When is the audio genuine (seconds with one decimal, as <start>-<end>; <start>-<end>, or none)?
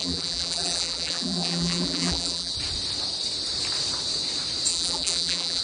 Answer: 2.5-4.7